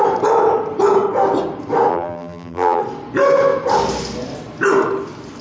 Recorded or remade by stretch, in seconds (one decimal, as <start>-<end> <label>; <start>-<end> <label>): 0.0-1.9 recorded; 1.9-2.8 remade; 2.8-5.4 recorded